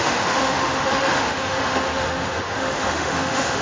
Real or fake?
fake